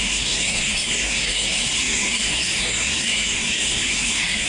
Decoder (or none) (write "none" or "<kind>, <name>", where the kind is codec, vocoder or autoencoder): codec, SNAC